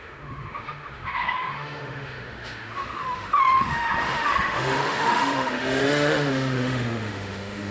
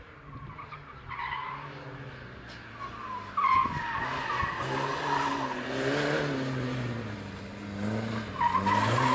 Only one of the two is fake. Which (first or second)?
first